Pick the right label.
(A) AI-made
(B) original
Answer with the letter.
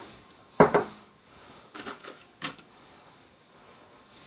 A